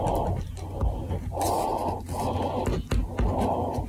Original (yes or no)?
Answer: yes